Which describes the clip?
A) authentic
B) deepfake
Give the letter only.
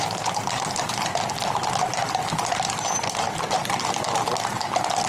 A